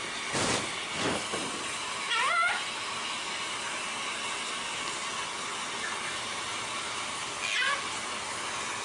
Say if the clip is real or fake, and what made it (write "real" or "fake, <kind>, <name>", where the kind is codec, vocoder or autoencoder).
real